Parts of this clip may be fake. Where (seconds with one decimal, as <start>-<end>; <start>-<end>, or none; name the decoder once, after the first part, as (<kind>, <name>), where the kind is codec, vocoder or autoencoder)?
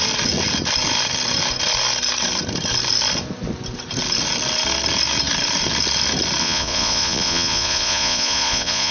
6.4-8.9 (vocoder, Vocos)